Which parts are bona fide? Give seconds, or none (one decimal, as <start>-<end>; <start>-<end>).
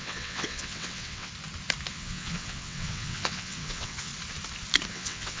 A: 1.3-1.9; 4.1-4.9